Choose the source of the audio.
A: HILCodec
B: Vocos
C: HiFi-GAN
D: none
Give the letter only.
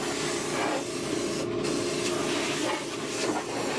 D